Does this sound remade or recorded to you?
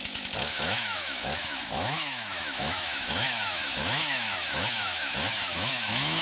remade